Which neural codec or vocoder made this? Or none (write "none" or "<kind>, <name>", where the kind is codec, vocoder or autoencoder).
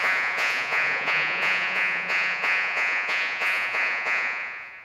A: vocoder, Vocos